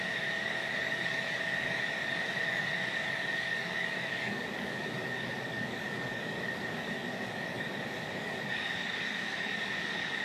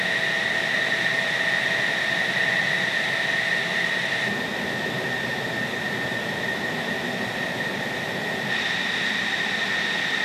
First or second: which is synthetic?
first